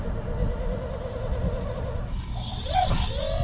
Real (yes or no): yes